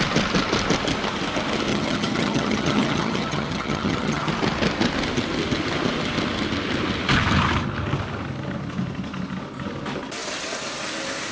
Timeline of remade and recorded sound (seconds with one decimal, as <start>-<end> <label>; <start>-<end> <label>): 0.0-1.7 recorded; 1.7-4.3 remade; 4.3-11.3 recorded